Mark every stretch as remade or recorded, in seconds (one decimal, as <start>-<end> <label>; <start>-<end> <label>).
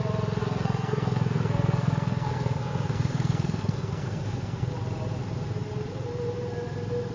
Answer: 0.0-0.4 recorded; 0.4-4.7 remade; 4.7-7.1 recorded